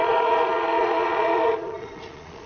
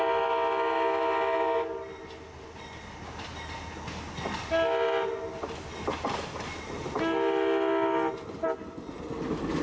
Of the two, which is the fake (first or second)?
first